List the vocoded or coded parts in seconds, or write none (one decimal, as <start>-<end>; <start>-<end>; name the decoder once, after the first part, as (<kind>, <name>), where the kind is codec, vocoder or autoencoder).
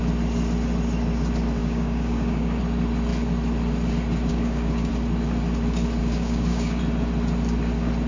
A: 1.6-2.6 (codec, DAC); 4.3-4.9; 6.0-6.8